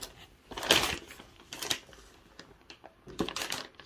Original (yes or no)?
no